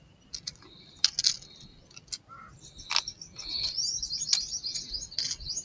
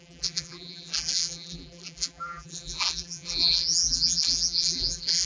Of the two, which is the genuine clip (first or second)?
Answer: first